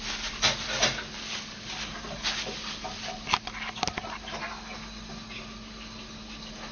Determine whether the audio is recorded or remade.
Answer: recorded